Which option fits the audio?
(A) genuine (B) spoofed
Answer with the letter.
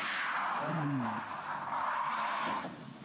A